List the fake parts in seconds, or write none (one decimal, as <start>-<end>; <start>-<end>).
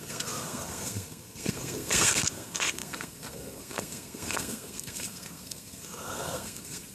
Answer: 0.0-6.9